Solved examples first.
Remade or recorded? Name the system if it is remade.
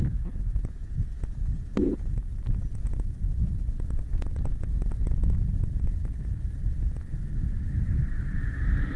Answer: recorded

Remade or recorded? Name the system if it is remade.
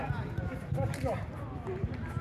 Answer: recorded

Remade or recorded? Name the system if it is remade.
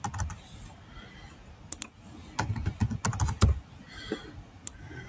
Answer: recorded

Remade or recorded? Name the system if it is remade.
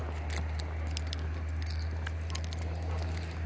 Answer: recorded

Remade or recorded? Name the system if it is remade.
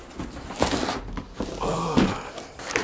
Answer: recorded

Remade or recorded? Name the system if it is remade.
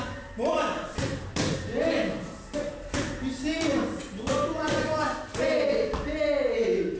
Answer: recorded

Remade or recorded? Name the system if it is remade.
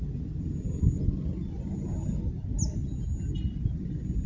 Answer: recorded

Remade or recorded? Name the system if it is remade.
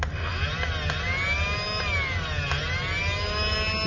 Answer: recorded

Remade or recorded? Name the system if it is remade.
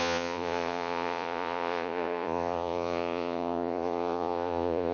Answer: remade, vocoder, Vocos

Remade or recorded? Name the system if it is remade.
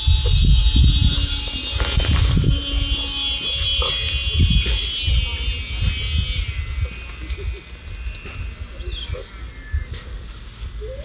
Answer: recorded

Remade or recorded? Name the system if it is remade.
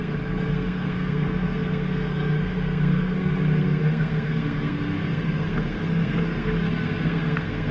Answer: remade, codec, SNAC